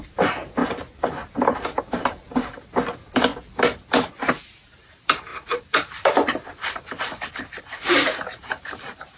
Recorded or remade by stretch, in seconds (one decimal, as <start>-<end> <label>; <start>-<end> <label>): 0.0-0.6 remade; 0.6-1.8 recorded; 1.8-3.3 remade; 3.3-4.1 recorded; 4.1-9.2 remade